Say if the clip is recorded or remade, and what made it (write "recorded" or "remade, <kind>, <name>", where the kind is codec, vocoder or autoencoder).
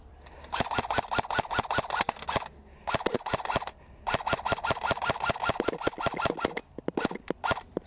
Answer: recorded